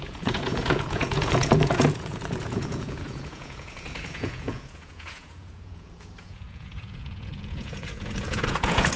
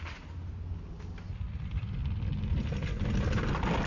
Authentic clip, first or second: second